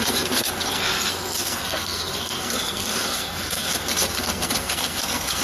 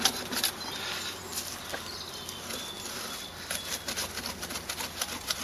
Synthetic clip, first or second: first